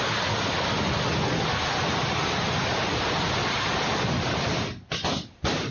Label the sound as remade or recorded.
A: recorded